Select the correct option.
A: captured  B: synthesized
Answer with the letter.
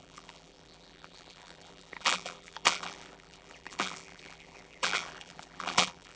B